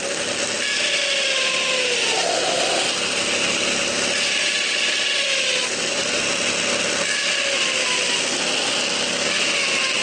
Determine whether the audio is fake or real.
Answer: real